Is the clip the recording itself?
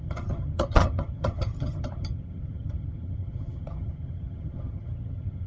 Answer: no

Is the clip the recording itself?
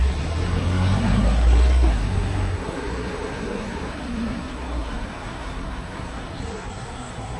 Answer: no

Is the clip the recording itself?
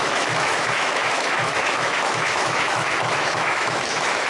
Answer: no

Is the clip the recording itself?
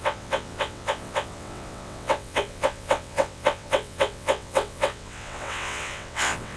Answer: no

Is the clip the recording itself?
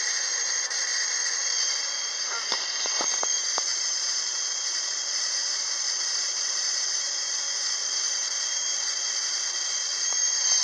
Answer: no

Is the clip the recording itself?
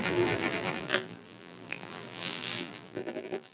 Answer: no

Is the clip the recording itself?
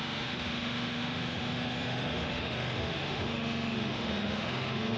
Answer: no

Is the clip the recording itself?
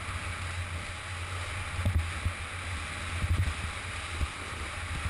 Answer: yes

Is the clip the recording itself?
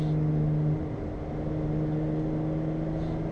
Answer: yes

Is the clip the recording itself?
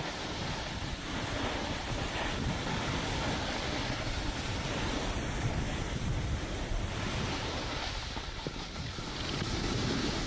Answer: yes